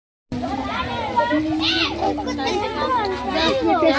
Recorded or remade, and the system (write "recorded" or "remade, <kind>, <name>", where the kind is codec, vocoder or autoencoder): recorded